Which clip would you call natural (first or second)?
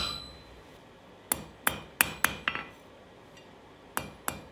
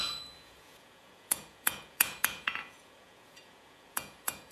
first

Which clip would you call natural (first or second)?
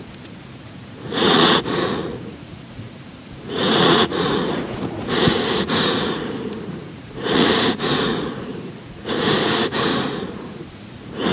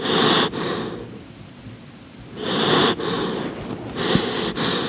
second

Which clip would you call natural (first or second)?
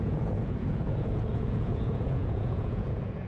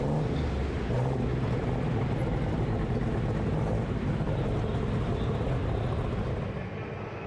second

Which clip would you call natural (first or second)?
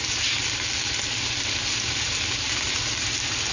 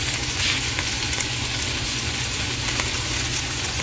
first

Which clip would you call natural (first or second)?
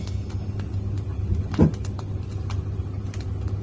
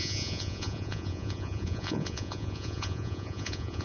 first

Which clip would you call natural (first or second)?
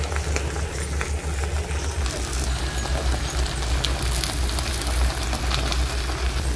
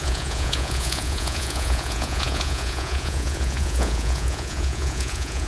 first